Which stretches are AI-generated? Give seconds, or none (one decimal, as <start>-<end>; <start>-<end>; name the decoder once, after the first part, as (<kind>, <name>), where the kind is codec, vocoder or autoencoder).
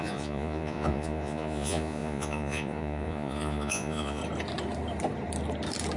0.0-4.2 (vocoder, Vocos)